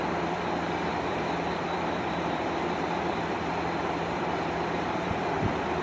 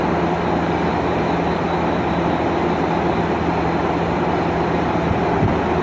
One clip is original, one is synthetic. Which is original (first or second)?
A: second